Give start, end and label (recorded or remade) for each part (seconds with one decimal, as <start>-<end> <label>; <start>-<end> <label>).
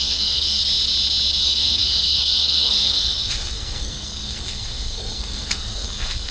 0.0-0.6 remade; 0.6-1.4 recorded; 1.4-6.3 remade